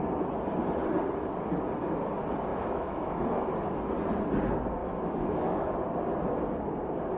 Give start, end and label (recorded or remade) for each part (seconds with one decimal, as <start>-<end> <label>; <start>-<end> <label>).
0.0-2.5 recorded; 2.5-3.2 remade; 3.2-4.8 recorded; 4.8-5.7 remade; 5.7-7.2 recorded